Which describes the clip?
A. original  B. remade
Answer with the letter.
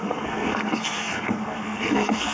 B